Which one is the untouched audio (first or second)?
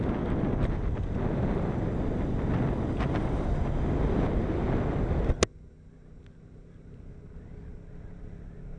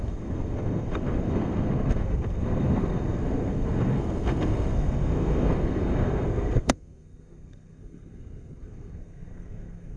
first